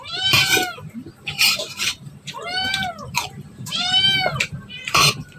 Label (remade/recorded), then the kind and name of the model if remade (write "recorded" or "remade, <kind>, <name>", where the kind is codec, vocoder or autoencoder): remade, vocoder, BigVGAN v2